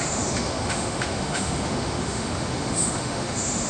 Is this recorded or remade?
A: remade